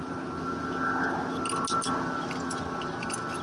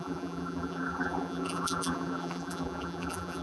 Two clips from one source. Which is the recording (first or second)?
first